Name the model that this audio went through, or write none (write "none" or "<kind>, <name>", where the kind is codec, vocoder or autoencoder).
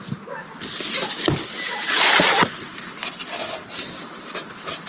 none